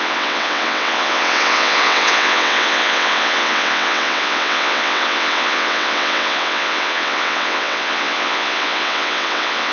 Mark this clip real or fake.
fake